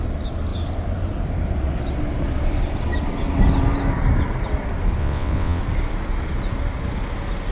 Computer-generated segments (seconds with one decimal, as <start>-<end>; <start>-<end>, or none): 5.0-5.6

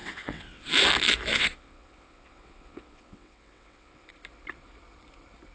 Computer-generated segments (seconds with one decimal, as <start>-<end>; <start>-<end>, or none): 0.0-0.7; 1.3-4.1

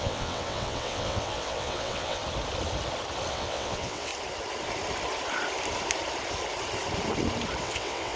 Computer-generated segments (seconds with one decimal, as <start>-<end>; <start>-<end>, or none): 0.0-2.2; 3.3-4.1; 7.6-8.2

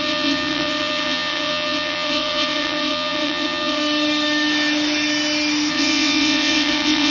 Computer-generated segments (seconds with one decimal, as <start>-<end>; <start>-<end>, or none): 0.0-3.8; 5.7-7.1

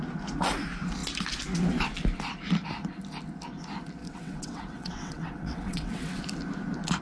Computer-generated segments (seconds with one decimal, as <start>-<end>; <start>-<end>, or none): 4.0-6.2

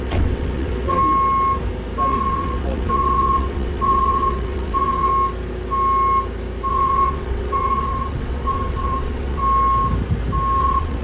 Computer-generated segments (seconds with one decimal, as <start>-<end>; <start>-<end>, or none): 0.0-1.0; 2.1-5.1; 6.7-9.4; 10.6-11.0

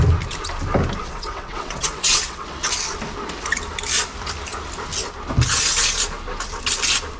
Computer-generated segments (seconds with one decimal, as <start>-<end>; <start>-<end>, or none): 1.0-2.6

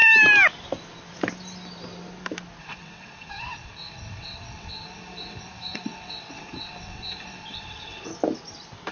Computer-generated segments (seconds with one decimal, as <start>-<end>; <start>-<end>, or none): 2.6-8.1